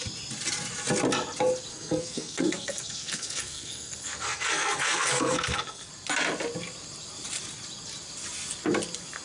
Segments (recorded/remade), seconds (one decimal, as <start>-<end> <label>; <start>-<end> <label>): 0.0-1.7 recorded; 1.7-5.9 remade; 5.9-9.2 recorded